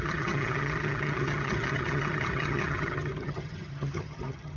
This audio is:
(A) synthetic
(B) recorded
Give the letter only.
A